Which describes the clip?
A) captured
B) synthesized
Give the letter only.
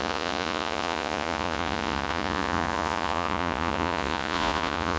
B